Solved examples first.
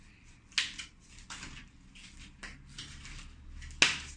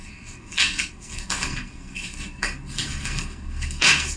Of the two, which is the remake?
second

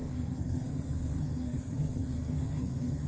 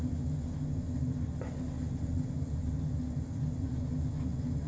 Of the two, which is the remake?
first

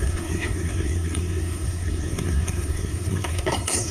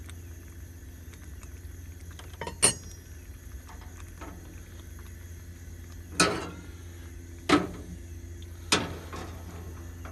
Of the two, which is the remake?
first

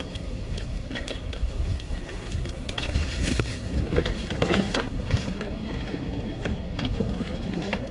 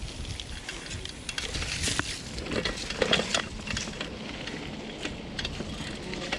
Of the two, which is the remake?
first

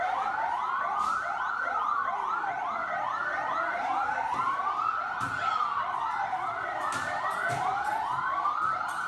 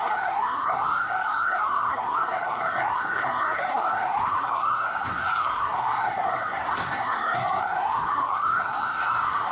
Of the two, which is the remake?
second